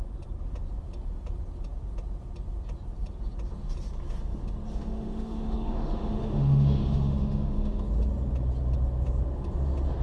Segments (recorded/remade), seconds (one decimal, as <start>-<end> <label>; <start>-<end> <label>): 0.0-4.7 recorded; 4.7-7.8 remade; 7.8-10.0 recorded